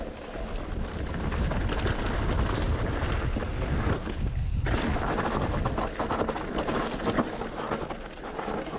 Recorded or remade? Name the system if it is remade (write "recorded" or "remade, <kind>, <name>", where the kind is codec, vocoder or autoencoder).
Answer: recorded